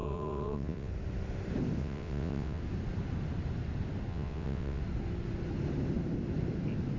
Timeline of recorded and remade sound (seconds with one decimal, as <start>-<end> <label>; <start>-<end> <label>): 0.0-0.9 remade; 0.9-1.8 recorded; 1.8-2.6 remade; 2.6-4.1 recorded; 4.1-4.8 remade; 4.8-7.0 recorded